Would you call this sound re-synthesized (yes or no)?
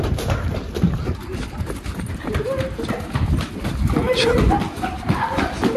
no